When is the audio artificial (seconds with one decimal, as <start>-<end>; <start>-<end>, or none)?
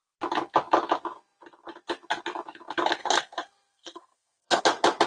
3.0-4.6